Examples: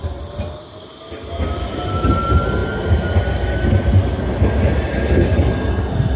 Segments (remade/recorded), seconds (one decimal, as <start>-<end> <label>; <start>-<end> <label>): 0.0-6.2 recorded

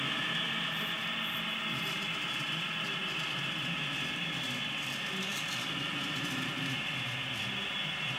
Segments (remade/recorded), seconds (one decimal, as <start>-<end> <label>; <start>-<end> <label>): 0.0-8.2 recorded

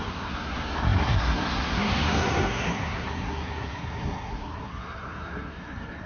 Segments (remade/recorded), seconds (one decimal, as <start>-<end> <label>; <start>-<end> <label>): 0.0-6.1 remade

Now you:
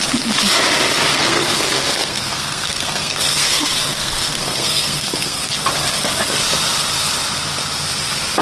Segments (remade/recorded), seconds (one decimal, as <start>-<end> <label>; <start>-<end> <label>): 0.0-1.1 recorded; 1.1-5.5 remade; 5.5-8.4 recorded

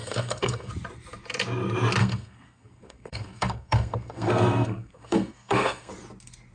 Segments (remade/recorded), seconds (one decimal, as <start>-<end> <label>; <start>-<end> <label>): 0.0-0.7 remade; 0.7-2.0 recorded; 2.0-5.9 remade; 5.9-6.5 recorded

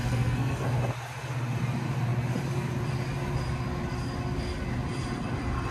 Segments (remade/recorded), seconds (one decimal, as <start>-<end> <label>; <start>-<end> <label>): 0.0-0.8 remade; 0.8-5.7 recorded

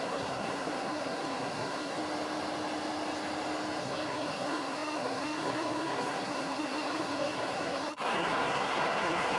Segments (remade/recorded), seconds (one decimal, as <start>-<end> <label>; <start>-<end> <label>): 0.0-2.0 remade; 2.0-3.8 recorded; 3.8-9.4 remade